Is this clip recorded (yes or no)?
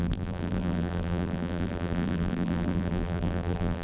no